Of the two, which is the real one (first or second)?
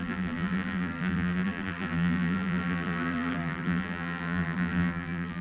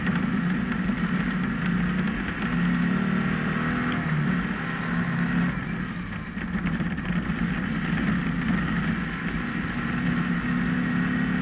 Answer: second